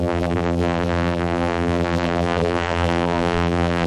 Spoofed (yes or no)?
yes